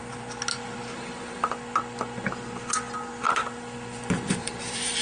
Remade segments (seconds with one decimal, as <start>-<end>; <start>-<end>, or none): 0.8-1.4; 4.3-5.0